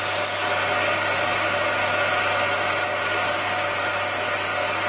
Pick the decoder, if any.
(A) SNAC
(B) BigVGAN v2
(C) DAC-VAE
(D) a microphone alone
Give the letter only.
D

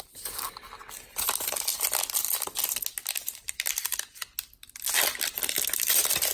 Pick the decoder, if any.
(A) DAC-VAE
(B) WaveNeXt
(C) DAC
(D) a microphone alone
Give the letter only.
D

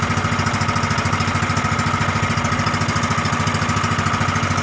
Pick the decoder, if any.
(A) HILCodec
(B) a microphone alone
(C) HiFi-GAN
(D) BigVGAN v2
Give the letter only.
B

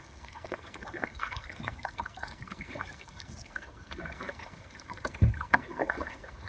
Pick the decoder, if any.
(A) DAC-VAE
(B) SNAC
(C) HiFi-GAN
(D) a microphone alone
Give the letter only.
B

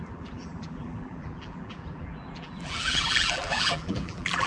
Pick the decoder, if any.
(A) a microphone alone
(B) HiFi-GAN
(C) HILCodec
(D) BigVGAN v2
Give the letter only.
D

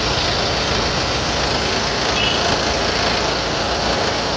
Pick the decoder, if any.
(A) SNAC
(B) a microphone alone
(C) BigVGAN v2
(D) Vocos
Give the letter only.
B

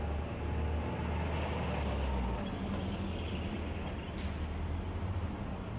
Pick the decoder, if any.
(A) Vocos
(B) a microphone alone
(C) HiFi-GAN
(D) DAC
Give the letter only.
B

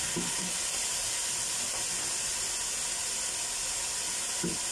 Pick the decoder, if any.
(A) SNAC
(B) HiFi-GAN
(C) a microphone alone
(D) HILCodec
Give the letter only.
C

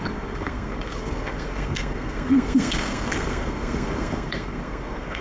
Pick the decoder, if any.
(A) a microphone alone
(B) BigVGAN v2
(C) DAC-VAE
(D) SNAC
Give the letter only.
D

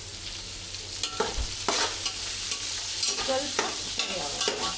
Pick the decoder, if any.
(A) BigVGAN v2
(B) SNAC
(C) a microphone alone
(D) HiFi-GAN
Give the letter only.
C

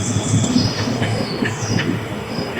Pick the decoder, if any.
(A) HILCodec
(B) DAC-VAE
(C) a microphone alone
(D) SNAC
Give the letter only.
B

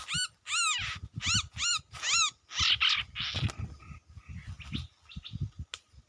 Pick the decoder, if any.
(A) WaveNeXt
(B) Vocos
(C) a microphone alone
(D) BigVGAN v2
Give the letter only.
C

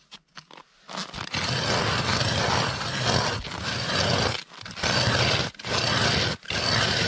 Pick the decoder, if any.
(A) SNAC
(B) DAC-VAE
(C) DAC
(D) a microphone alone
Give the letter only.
D